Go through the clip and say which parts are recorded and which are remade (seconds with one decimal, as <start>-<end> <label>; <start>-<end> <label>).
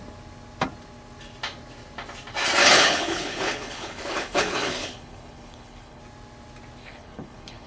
0.0-2.6 recorded; 2.6-6.0 remade; 6.0-6.8 recorded; 6.8-7.7 remade